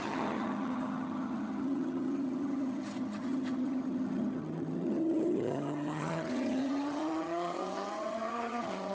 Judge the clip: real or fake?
fake